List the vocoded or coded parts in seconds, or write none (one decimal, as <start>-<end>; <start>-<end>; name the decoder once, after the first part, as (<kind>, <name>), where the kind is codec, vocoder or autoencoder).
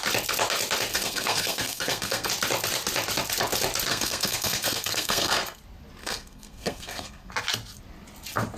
0.9-2.3 (codec, SNAC); 3.9-5.6; 6.0-7.3